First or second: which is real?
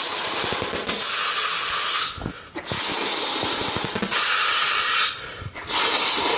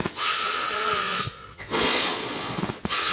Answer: first